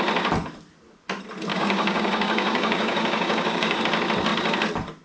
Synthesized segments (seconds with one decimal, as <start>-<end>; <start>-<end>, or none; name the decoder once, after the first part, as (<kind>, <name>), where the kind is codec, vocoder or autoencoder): 1.5-3.8 (codec, DAC)